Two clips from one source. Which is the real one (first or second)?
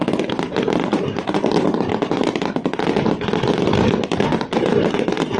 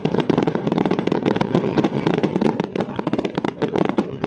first